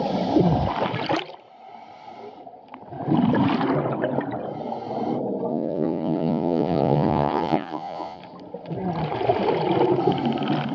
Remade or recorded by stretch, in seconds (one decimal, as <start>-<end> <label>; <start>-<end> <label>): 0.0-5.5 recorded; 5.5-8.2 remade; 8.2-10.7 recorded